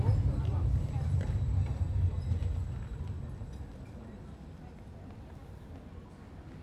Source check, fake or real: real